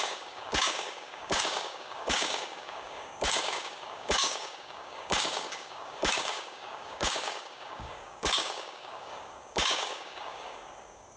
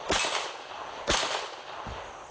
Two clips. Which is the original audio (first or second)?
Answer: second